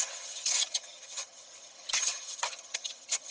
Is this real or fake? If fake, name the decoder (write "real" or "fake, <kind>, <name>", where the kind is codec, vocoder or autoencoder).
fake, vocoder, HiFi-GAN